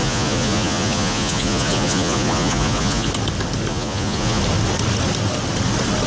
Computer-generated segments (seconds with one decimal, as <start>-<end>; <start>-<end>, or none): 0.0-3.1; 3.7-4.4